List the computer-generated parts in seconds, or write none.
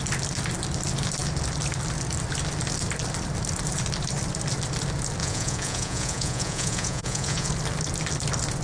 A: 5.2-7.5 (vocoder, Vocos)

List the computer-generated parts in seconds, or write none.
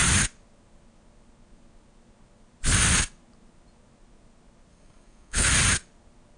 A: 4.7-5.5 (codec, SNAC)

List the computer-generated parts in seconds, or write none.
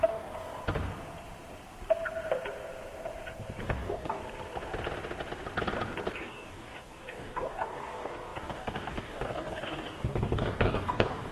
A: 0.0-0.6 (codec, DAC); 3.6-4.2; 6.1-11.3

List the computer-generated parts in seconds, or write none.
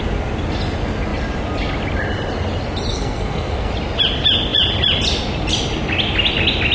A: 2.9-3.7 (codec, SNAC)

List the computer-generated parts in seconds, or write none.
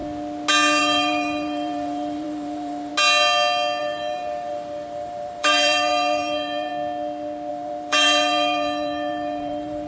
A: 0.8-2.9 (vocoder, BigVGAN v2); 3.8-6.7; 7.5-9.9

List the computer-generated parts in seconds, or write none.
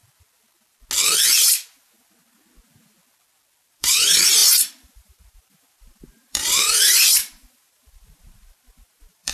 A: 3.6-9.3 (vocoder, BigVGAN v2)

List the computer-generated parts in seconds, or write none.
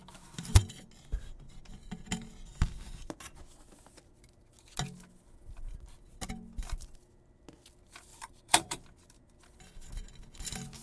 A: 8.1-8.8 (vocoder, BigVGAN v2)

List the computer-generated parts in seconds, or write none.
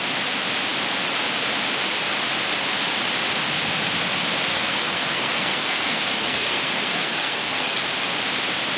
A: 4.5-7.8 (codec, SNAC)